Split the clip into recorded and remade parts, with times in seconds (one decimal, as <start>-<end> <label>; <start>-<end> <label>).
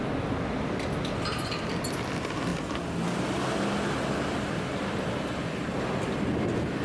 0.0-6.8 recorded